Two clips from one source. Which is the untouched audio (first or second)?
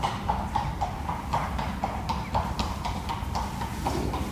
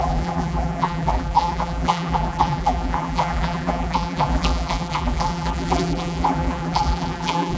first